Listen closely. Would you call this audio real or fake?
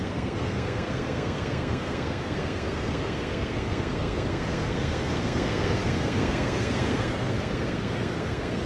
fake